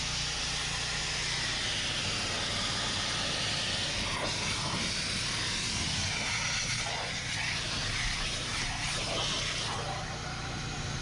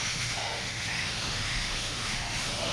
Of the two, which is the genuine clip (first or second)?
first